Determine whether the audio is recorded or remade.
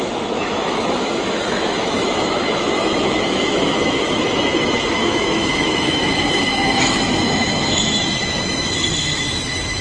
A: remade